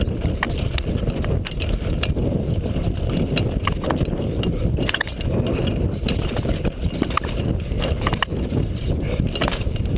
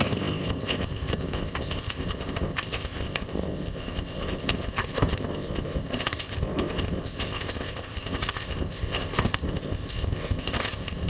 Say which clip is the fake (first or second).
second